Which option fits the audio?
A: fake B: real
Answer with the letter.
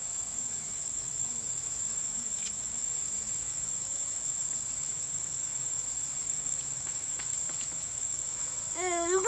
A